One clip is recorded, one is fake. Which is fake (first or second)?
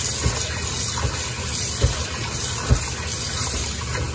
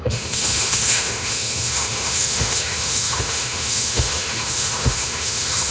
second